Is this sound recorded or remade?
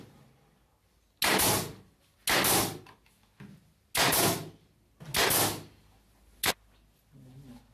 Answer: recorded